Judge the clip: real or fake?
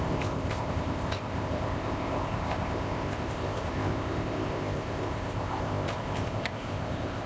fake